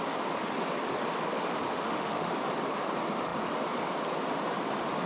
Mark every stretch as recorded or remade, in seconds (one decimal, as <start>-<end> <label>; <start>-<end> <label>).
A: 0.0-1.7 recorded; 1.7-2.3 remade; 2.3-5.1 recorded